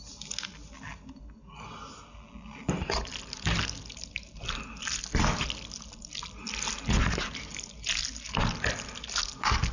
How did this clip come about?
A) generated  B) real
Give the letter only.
B